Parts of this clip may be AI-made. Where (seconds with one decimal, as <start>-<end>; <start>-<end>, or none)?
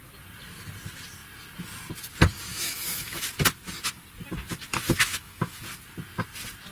2.5-3.3; 5.1-5.6